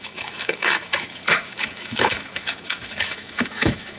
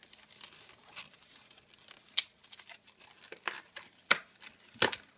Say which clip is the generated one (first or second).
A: first